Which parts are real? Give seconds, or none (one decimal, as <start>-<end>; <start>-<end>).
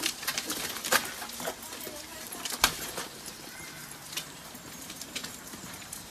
1.0-1.7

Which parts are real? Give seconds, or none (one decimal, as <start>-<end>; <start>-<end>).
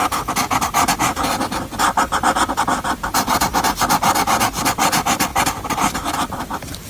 0.0-6.9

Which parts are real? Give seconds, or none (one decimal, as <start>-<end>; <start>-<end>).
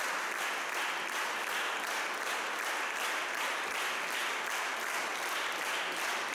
0.0-6.3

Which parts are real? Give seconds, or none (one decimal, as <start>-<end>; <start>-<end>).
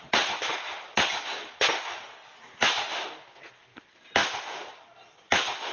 0.0-5.7